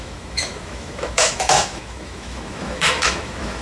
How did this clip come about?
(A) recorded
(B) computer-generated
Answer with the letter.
B